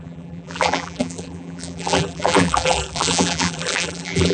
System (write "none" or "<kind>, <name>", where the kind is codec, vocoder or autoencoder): vocoder, BigVGAN v2